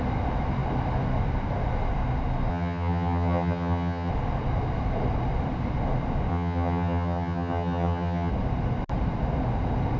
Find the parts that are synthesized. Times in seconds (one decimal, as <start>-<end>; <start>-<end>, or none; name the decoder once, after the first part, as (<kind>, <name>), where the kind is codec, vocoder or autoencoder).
2.5-4.1 (vocoder, HiFi-GAN); 6.3-8.3

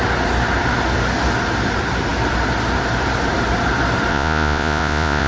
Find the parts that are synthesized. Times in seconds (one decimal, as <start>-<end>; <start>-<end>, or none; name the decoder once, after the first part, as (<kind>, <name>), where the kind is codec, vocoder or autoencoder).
4.1-5.3 (vocoder, Vocos)

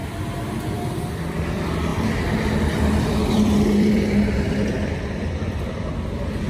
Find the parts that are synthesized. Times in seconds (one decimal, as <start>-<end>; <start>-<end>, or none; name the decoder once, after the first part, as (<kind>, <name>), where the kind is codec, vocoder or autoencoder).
1.9-4.2 (vocoder, BigVGAN v2)

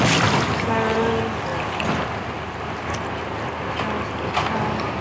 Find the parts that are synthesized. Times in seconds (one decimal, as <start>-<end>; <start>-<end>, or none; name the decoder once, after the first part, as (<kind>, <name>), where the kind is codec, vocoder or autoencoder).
1.5-2.3 (vocoder, BigVGAN v2)